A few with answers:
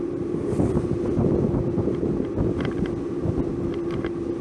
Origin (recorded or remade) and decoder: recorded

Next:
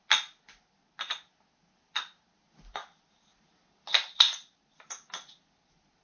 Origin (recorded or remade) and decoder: recorded